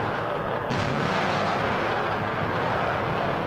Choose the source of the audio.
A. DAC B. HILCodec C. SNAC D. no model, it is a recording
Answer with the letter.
C